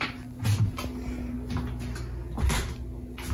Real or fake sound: real